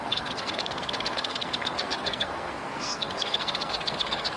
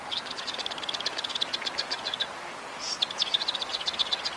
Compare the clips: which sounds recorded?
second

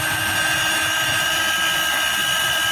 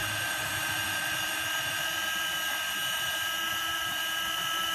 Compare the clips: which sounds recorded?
first